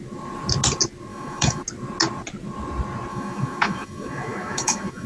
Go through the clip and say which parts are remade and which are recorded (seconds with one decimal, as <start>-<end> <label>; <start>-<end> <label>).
0.0-1.1 recorded; 1.1-1.6 remade; 1.6-3.1 recorded; 3.1-5.1 remade